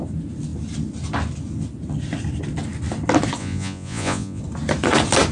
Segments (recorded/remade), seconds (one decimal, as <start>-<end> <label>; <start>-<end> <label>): 0.0-3.4 recorded; 3.4-4.4 remade; 4.4-5.3 recorded